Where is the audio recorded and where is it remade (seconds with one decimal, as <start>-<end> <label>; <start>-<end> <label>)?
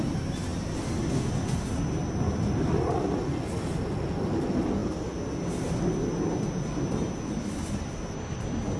0.0-8.8 recorded